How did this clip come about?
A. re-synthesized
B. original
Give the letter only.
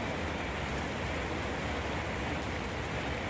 B